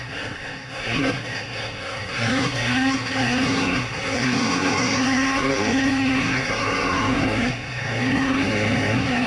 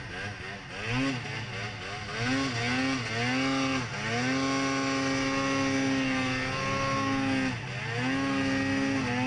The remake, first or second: first